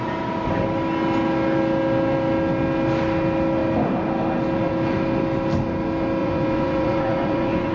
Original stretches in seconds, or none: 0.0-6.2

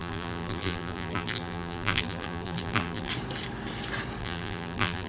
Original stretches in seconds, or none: 3.1-4.2

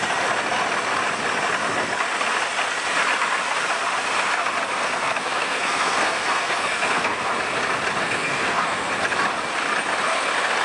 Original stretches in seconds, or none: 0.0-4.8; 7.3-8.0; 8.9-10.6

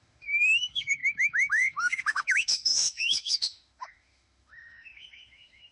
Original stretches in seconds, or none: none